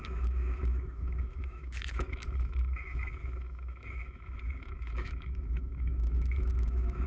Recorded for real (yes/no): no